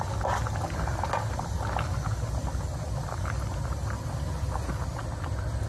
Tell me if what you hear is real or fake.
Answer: real